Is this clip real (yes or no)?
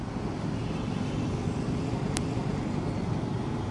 yes